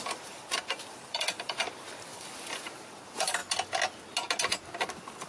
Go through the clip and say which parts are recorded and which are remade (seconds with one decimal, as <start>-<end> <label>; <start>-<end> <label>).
0.0-3.4 remade; 3.4-4.8 recorded; 4.8-5.3 remade